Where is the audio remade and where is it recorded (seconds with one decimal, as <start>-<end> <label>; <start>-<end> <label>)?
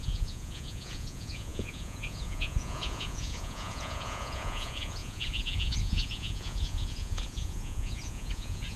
0.0-8.8 remade